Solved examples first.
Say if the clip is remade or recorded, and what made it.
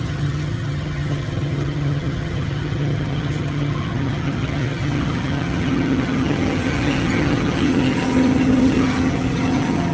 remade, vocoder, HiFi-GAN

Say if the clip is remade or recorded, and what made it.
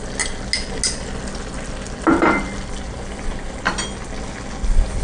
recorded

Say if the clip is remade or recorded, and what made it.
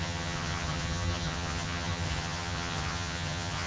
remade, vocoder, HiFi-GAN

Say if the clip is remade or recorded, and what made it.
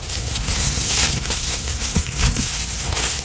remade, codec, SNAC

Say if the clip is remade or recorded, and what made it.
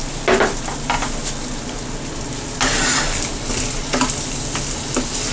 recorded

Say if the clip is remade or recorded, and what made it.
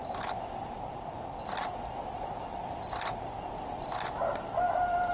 recorded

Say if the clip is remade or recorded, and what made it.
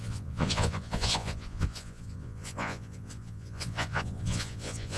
remade, vocoder, Vocos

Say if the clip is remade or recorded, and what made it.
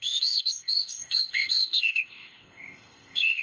remade, codec, ZipCodec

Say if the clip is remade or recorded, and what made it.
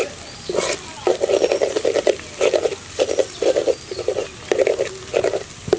recorded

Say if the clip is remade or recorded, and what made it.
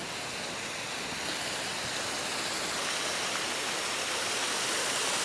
recorded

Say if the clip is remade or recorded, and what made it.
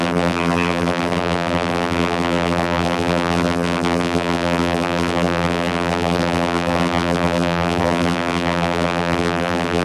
remade, vocoder, BigVGAN v2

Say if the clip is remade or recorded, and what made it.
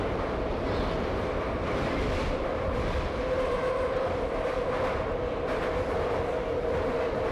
recorded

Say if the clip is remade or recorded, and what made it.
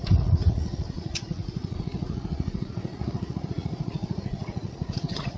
remade, vocoder, Vocos